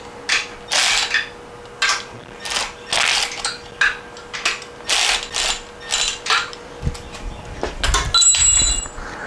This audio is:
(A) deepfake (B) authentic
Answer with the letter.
B